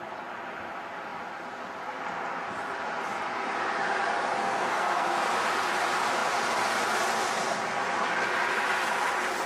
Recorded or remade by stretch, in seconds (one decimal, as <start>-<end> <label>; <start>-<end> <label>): 0.0-4.4 recorded; 4.4-5.2 remade; 5.2-9.5 recorded